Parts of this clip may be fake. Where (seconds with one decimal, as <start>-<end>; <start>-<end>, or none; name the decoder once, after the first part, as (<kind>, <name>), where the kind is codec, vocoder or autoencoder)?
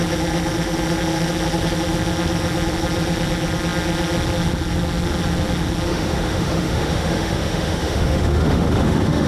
5.9-9.3 (autoencoder, DAC-VAE)